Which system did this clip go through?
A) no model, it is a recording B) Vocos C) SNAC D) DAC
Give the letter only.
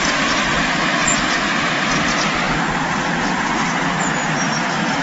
A